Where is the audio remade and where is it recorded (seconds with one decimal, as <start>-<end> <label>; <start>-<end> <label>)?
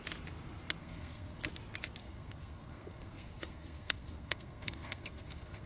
0.0-0.8 recorded; 0.8-1.4 remade; 1.4-2.0 recorded; 2.0-5.7 remade